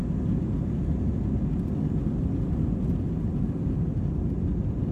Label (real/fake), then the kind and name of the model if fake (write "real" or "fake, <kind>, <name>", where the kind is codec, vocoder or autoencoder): real